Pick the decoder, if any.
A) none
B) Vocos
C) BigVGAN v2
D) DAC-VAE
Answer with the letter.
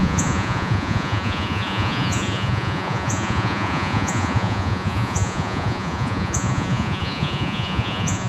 B